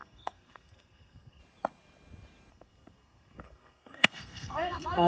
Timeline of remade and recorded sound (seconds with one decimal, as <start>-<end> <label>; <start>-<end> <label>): 0.0-1.4 remade; 1.4-2.5 recorded; 2.5-5.1 remade